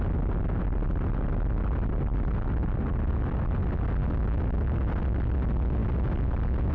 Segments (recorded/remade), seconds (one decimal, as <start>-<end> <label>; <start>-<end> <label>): 0.0-4.0 recorded; 4.0-5.0 remade; 5.0-6.7 recorded